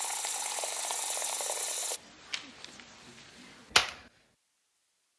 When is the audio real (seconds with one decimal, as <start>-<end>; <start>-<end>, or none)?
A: 0.0-5.2